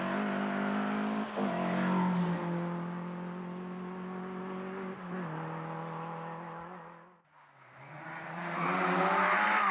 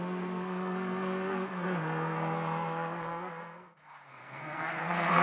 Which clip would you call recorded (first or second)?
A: first